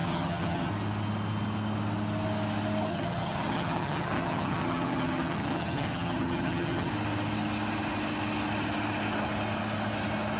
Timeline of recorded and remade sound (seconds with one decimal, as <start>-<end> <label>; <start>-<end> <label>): 0.0-0.7 remade; 0.7-2.9 recorded; 2.9-6.9 remade; 6.9-10.4 recorded